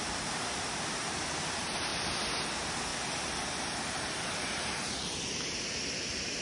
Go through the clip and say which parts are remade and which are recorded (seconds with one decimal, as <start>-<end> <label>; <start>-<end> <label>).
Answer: 0.0-1.9 remade; 1.9-2.5 recorded; 2.5-2.9 remade; 2.9-3.6 recorded; 3.6-6.4 remade